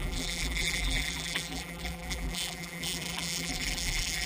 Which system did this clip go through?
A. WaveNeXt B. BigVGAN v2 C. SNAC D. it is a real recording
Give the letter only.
B